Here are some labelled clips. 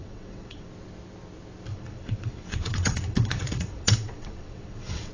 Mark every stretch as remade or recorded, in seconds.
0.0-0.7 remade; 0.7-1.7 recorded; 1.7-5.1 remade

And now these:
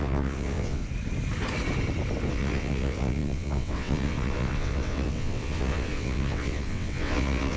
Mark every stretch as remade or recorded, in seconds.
0.0-0.8 remade; 0.8-2.3 recorded; 2.3-7.6 remade

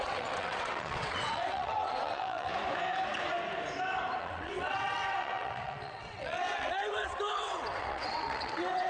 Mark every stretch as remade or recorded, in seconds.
0.0-2.5 remade; 2.5-4.2 recorded; 4.2-8.9 remade

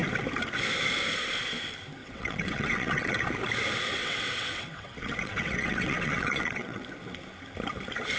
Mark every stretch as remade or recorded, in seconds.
0.0-2.0 recorded; 2.0-3.2 remade; 3.2-3.9 recorded; 3.9-6.8 remade; 6.8-8.2 recorded

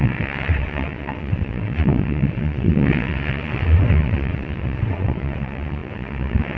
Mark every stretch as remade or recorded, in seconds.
0.0-6.6 remade

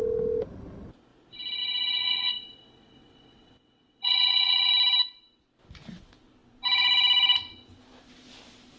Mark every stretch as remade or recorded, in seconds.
0.0-2.0 recorded; 2.0-4.7 remade; 4.7-8.8 recorded

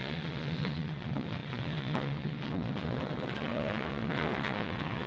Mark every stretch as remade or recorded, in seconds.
0.0-5.1 remade